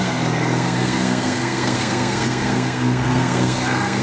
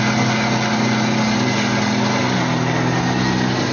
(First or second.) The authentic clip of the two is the second